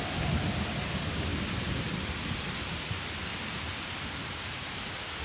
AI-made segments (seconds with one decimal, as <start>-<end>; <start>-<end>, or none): 1.3-2.1